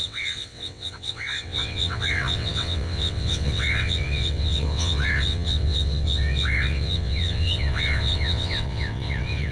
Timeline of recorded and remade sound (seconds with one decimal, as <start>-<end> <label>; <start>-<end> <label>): 0.0-9.5 remade